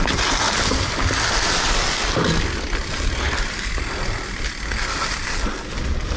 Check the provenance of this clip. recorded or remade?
recorded